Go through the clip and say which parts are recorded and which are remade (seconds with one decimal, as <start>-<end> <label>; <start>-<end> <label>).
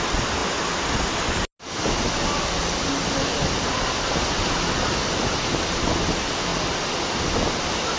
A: 0.0-8.0 recorded